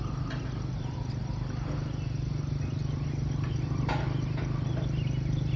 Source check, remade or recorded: recorded